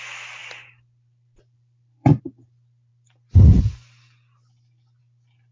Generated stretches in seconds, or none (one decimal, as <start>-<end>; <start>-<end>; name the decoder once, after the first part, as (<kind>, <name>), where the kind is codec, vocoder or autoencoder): 0.4-2.2 (vocoder, BigVGAN v2)